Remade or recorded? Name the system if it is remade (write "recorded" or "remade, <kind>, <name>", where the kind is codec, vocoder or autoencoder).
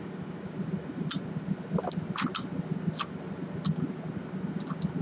recorded